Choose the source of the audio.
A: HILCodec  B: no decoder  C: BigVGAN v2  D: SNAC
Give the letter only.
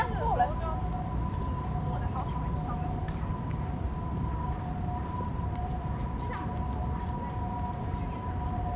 B